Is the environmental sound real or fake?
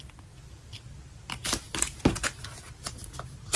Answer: real